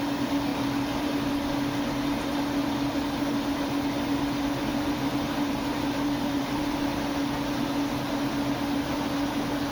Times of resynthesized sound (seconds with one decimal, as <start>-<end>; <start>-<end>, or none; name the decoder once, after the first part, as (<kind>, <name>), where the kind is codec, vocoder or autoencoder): 0.5-1.3 (vocoder, BigVGAN v2); 4.7-7.0